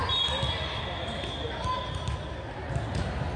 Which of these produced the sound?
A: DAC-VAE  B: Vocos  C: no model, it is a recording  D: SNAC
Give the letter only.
C